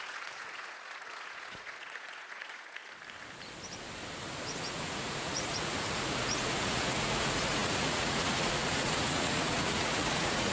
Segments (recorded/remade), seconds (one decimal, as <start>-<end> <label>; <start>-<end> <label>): 0.0-2.8 remade; 2.8-4.6 recorded; 4.6-10.5 remade